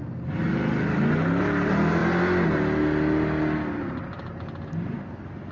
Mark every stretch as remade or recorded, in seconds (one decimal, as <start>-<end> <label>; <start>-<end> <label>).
0.0-5.5 recorded